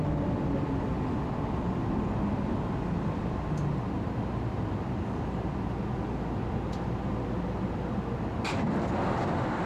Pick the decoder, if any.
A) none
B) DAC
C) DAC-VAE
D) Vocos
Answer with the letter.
A